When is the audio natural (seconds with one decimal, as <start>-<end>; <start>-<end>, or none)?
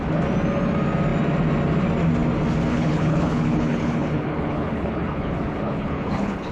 0.0-2.7